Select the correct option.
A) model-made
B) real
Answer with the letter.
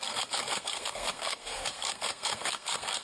A